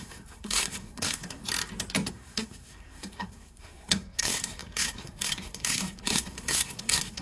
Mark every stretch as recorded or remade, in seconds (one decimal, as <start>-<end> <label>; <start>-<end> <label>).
0.0-1.4 remade; 1.4-2.1 recorded; 2.1-7.2 remade